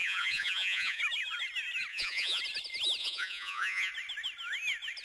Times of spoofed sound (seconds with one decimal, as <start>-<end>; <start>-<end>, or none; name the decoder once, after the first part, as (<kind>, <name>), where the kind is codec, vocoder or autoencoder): 0.0-1.0 (vocoder, Vocos); 1.9-2.4; 3.0-3.9